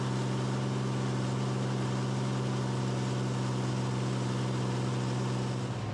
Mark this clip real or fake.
real